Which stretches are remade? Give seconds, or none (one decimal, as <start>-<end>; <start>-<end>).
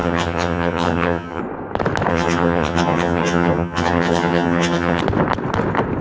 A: 0.0-1.4; 2.1-5.0